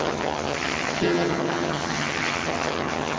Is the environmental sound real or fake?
fake